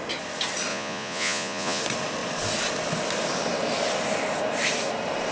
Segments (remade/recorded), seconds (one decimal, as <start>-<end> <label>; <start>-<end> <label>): 0.0-0.7 recorded; 0.7-1.8 remade; 1.8-5.3 recorded